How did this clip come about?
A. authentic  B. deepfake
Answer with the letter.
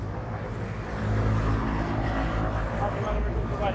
A